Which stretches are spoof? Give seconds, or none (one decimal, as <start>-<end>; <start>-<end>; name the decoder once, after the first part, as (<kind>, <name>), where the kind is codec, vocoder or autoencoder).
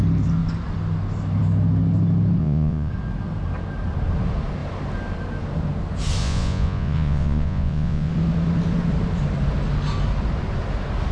2.4-2.9 (vocoder, Vocos); 6.2-8.1